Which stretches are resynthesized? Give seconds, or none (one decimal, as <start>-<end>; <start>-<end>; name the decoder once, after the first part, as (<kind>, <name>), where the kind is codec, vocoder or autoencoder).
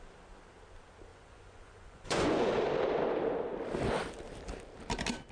1.1-2.5 (vocoder, Vocos)